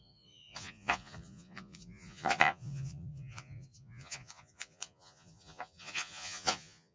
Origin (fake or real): fake